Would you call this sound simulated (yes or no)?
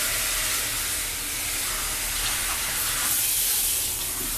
no